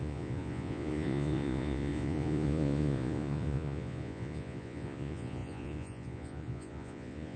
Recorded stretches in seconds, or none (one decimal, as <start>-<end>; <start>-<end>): none